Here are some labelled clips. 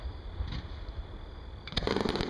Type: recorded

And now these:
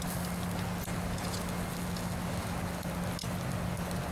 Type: recorded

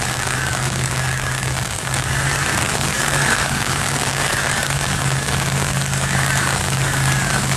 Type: remade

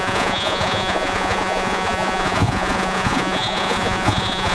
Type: remade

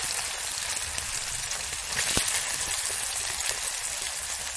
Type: recorded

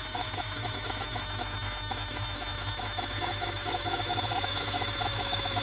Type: remade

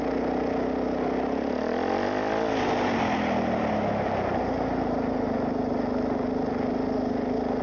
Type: recorded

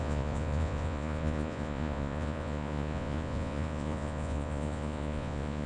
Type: remade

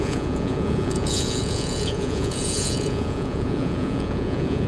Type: remade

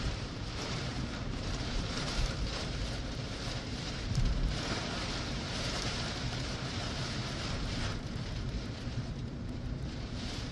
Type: remade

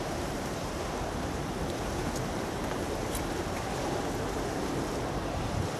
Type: remade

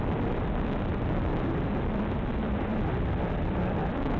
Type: recorded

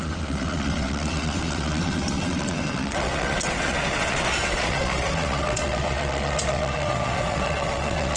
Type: remade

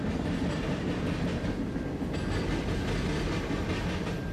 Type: recorded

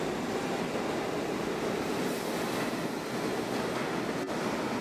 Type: recorded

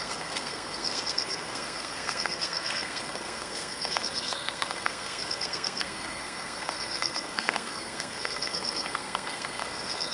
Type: remade